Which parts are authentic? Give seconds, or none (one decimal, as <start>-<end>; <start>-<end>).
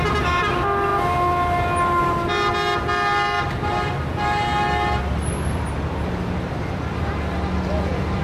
0.0-8.2